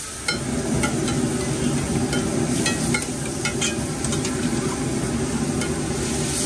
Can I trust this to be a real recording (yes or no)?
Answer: yes